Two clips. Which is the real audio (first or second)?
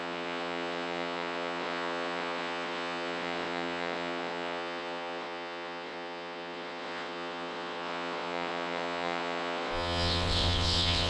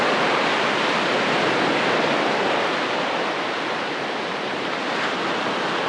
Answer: second